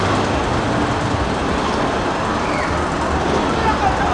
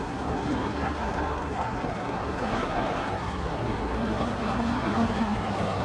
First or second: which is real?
first